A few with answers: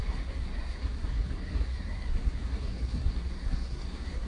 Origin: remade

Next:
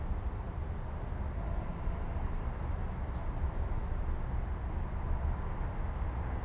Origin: recorded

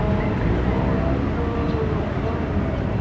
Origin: recorded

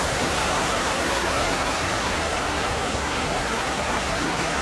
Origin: remade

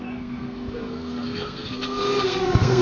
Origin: remade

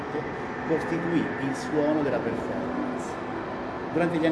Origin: recorded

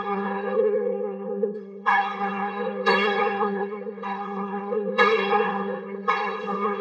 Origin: remade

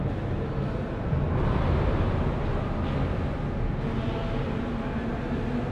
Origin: recorded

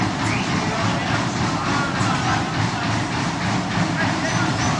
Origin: recorded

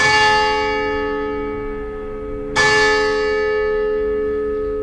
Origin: recorded